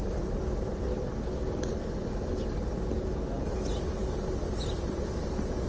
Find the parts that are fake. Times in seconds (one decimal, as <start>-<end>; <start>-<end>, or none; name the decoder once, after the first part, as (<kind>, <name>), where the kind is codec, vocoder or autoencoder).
none